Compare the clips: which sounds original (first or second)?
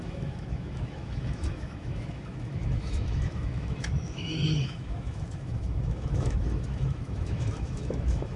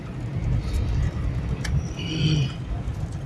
second